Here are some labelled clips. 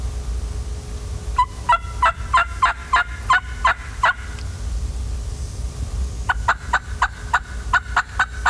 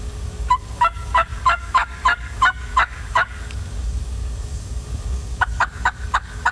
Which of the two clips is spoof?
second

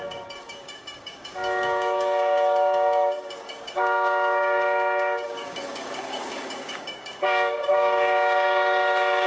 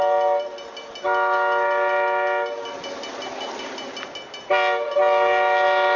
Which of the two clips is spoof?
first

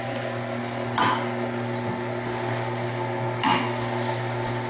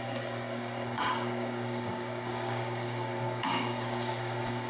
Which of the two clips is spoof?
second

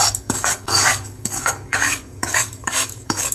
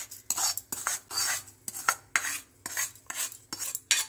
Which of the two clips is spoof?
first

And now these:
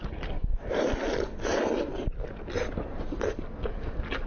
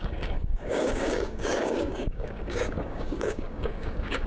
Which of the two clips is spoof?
second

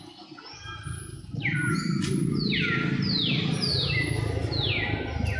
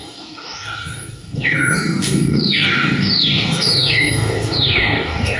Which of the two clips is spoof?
second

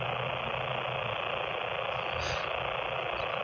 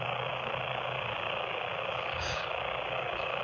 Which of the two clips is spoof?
second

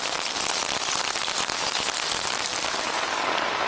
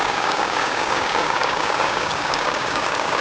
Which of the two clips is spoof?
second